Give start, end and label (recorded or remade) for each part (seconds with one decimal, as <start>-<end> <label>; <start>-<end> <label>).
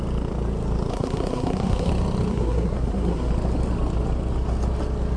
0.0-0.9 recorded; 0.9-1.9 remade; 1.9-2.3 recorded; 2.3-3.3 remade; 3.3-5.2 recorded